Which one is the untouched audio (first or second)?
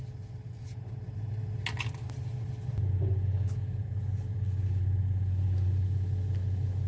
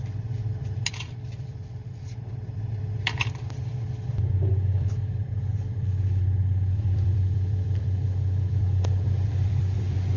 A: first